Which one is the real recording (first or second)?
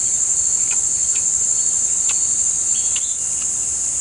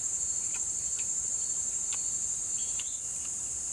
first